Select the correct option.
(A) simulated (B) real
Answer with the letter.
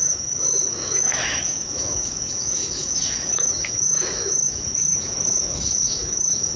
A